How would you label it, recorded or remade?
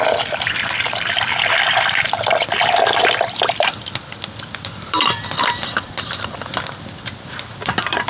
remade